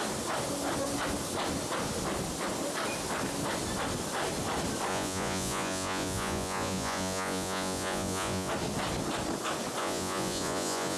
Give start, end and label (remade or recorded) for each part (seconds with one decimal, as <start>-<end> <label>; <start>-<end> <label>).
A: 0.0-4.9 recorded; 4.9-8.5 remade; 8.5-9.8 recorded; 9.8-11.0 remade